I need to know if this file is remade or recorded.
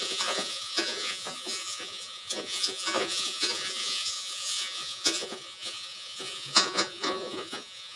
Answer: remade